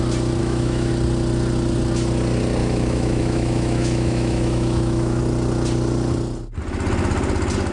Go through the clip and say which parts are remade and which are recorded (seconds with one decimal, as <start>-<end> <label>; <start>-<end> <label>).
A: 0.0-0.4 recorded; 0.4-0.9 remade; 0.9-2.6 recorded; 2.6-5.2 remade; 5.2-7.7 recorded